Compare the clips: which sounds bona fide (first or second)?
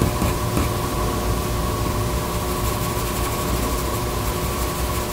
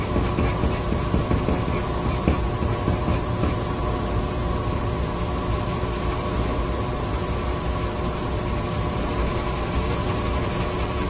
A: first